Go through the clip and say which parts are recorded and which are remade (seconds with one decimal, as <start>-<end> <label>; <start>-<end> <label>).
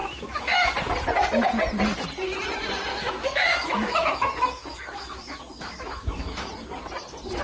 0.0-0.7 remade; 0.7-2.9 recorded; 2.9-6.5 remade; 6.5-7.4 recorded